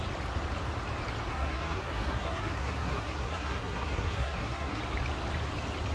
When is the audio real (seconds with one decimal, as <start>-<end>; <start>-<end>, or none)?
0.0-1.3; 4.8-5.9